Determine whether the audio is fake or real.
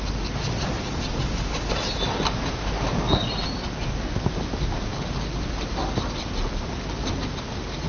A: real